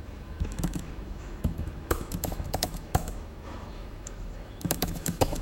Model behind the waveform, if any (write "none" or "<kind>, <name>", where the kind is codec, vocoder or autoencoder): autoencoder, DAC-VAE